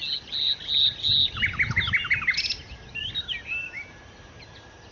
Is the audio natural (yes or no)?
yes